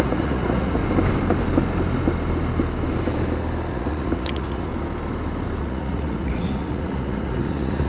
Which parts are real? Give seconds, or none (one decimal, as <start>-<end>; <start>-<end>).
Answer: 0.8-3.7; 4.7-5.6